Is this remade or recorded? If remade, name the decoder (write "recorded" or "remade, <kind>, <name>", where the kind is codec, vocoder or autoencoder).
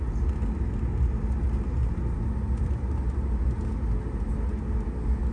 recorded